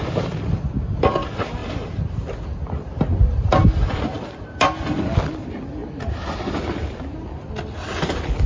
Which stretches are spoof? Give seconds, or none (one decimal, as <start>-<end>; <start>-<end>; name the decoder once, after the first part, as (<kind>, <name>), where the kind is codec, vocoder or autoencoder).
none